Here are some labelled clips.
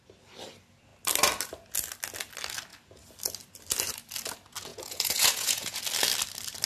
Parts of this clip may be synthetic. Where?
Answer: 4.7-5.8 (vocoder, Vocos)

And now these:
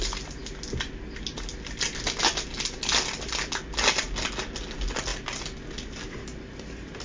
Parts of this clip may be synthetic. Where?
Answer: none

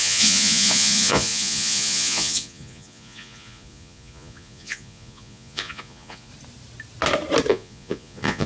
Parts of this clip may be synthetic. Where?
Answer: 0.0-6.3 (vocoder, Vocos); 7.5-8.5

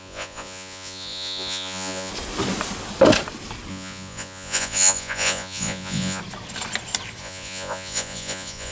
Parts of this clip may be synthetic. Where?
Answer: 0.0-2.1 (vocoder, Vocos); 3.7-6.2; 7.2-8.7

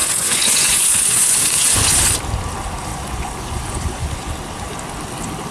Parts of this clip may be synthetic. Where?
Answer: 0.0-2.1 (vocoder, Vocos); 2.9-4.3

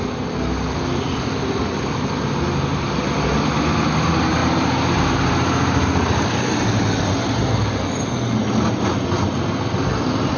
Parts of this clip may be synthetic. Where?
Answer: none

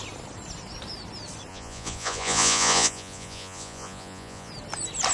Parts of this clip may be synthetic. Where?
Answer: 1.5-4.5 (vocoder, Vocos)